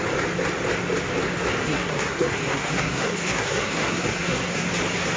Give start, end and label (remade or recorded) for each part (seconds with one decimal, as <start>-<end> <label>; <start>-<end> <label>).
0.0-1.6 recorded; 1.6-4.7 remade; 4.7-5.2 recorded